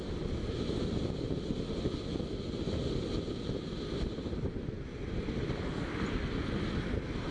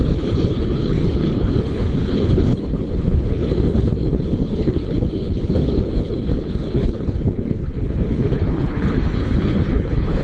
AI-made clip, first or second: second